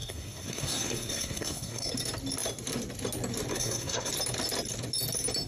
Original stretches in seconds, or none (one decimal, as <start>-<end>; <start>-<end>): 1.9-3.5; 4.1-5.5